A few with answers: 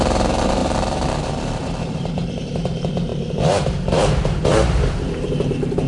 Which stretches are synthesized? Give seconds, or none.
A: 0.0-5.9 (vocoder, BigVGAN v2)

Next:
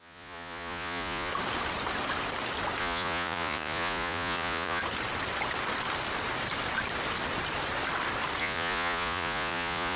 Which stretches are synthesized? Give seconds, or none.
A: 0.0-1.3 (vocoder, Vocos); 2.8-4.8; 8.4-10.0

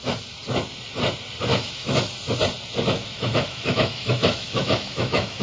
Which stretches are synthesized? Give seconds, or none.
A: 1.5-2.1 (autoencoder, DAC-VAE); 3.0-5.4

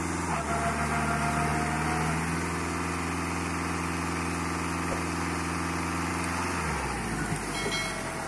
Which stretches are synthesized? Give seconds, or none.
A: none

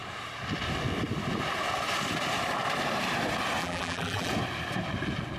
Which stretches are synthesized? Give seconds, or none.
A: 3.6-4.3 (vocoder, BigVGAN v2)

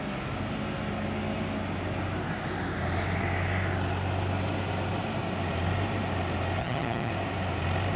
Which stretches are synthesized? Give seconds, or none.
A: 6.6-7.1 (vocoder, HiFi-GAN)

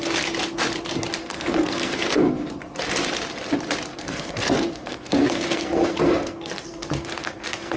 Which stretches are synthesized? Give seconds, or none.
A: 1.2-2.5 (codec, SNAC); 3.9-7.8

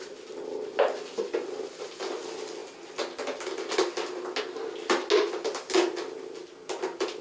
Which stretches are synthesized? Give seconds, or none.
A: none